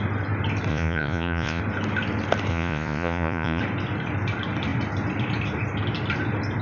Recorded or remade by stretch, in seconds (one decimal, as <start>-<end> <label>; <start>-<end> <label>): 0.0-0.7 recorded; 0.7-1.6 remade; 1.6-2.5 recorded; 2.5-3.6 remade; 3.6-6.6 recorded